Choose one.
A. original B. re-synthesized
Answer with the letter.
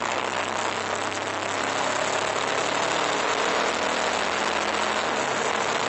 A